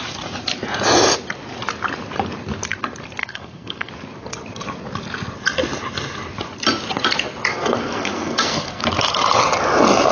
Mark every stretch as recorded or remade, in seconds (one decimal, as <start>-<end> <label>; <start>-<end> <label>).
0.0-3.2 recorded; 3.2-3.9 remade; 3.9-7.5 recorded; 7.5-8.8 remade; 8.8-10.1 recorded